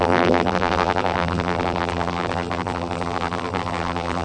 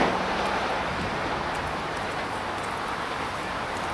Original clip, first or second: second